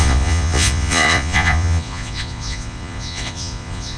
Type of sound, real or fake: fake